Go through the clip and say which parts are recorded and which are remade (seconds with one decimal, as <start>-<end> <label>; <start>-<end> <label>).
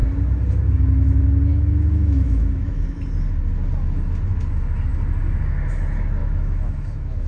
0.0-1.5 recorded; 1.5-3.0 remade; 3.0-6.2 recorded; 6.2-7.3 remade